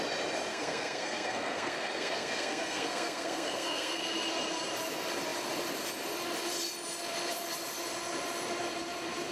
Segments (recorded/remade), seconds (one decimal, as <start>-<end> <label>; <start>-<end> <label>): 0.0-0.5 recorded; 0.5-4.0 remade; 4.0-9.3 recorded